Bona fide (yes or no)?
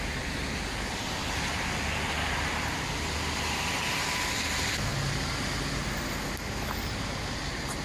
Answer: yes